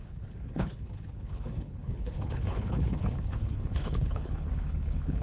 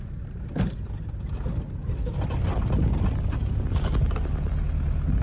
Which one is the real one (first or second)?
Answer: second